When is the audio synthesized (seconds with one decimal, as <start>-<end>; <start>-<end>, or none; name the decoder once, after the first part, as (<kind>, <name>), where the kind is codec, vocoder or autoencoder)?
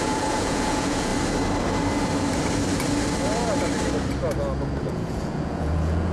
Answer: 0.0-1.1 (vocoder, Vocos); 4.8-6.1